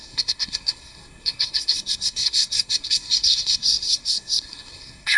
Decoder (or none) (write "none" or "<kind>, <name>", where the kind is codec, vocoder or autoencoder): codec, SNAC